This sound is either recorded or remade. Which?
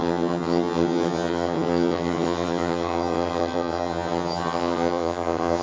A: remade